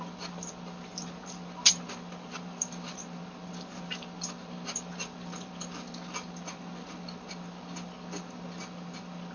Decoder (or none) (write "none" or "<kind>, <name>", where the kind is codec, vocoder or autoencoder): none